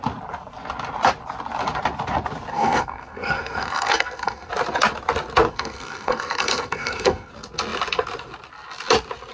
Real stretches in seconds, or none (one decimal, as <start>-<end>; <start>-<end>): 0.0-2.5; 4.5-5.5; 7.3-9.3